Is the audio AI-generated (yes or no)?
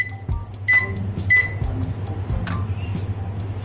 no